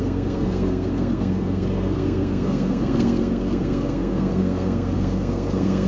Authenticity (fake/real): fake